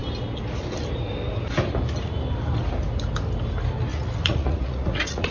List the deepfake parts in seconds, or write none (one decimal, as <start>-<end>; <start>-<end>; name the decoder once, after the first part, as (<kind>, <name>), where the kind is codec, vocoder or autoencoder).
3.9-5.3 (vocoder, Vocos)